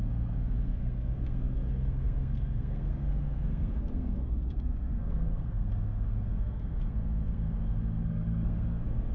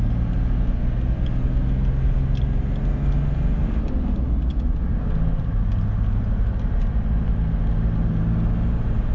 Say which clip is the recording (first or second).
second